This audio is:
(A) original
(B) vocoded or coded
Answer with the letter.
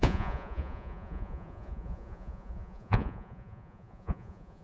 B